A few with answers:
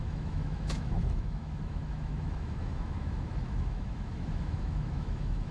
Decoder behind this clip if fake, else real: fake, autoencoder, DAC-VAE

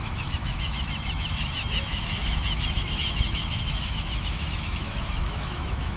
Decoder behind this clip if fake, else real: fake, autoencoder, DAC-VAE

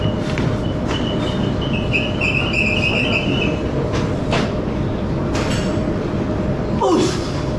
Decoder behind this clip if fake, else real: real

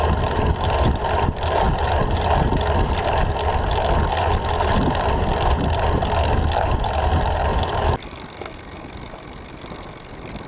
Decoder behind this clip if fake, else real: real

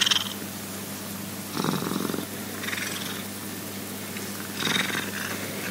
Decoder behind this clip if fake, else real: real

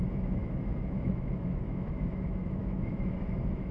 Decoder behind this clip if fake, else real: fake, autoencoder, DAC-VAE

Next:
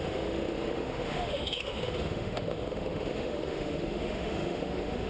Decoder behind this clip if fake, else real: fake, autoencoder, DAC-VAE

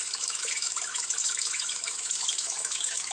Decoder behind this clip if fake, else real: fake, autoencoder, DAC-VAE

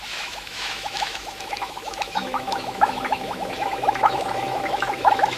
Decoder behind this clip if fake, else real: fake, autoencoder, DAC-VAE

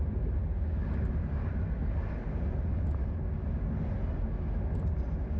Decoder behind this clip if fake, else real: real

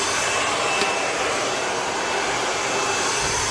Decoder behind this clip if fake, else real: real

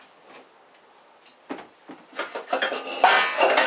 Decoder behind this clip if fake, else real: real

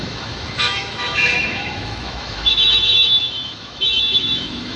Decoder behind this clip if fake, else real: fake, autoencoder, DAC-VAE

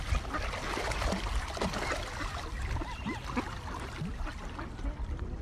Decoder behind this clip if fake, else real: real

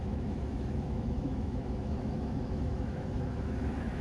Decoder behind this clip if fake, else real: fake, autoencoder, DAC-VAE